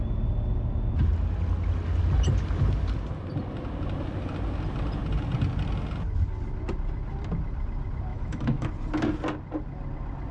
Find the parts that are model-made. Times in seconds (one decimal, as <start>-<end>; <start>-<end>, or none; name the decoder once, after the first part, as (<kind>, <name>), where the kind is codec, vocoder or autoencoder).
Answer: 8.1-8.7 (autoencoder, DAC-VAE)